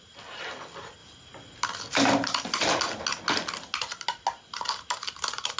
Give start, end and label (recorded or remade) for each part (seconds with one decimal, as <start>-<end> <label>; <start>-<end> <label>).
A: 0.0-5.6 recorded